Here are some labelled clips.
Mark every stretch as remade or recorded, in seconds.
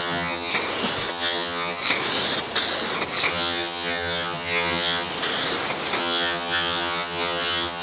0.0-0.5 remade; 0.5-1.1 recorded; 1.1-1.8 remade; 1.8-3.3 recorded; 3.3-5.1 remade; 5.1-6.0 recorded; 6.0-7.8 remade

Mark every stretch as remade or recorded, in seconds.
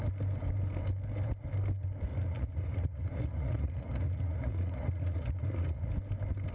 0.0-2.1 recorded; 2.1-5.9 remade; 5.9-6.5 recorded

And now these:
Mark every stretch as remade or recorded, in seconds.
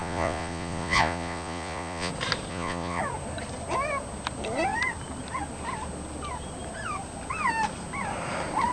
0.0-2.1 remade; 2.1-2.5 recorded; 2.5-3.0 remade; 3.0-8.7 recorded